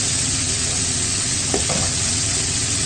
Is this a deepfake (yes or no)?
yes